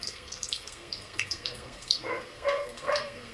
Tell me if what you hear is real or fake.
fake